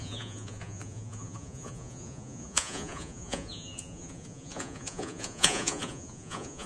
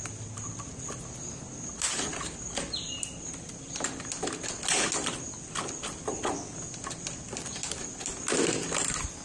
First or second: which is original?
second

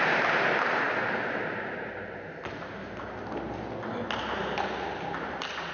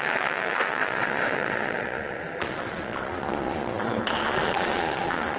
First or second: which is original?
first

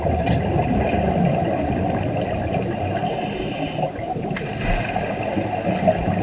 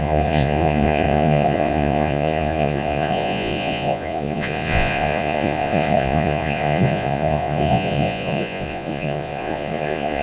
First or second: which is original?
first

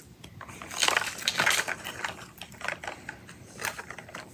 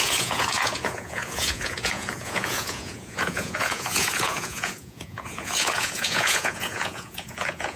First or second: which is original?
first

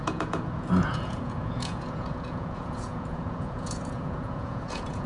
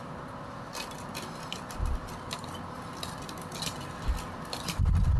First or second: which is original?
second